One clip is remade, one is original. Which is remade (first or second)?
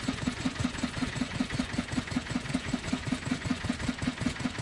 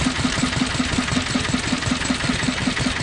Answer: first